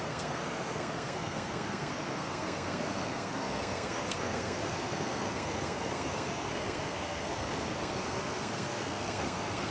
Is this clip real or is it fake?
fake